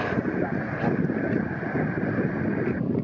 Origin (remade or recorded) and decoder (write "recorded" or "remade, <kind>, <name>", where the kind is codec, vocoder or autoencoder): recorded